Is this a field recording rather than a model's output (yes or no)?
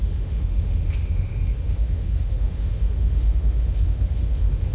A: no